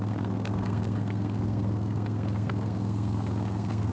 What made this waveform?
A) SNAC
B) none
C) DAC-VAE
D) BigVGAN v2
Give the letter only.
A